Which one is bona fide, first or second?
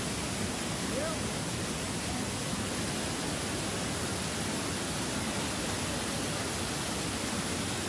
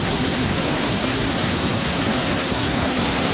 first